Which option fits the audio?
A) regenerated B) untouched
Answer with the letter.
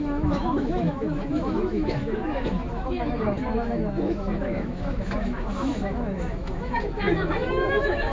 A